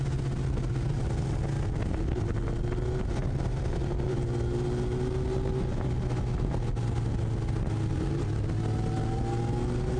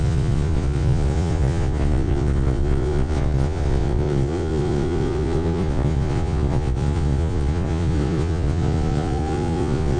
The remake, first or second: second